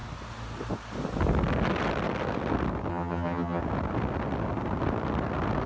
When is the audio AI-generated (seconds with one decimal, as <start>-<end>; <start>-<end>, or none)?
2.9-3.6